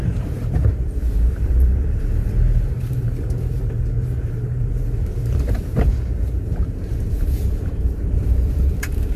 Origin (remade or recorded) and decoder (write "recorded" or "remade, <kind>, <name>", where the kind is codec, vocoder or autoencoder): remade, vocoder, BigVGAN v2